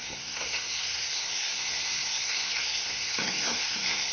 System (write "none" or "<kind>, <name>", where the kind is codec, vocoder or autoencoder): codec, SNAC